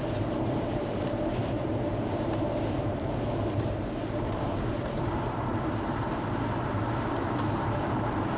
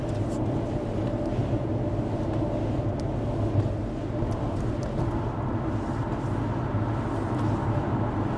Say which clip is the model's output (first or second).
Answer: first